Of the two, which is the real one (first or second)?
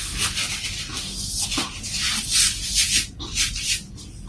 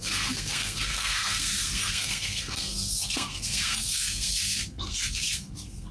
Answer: first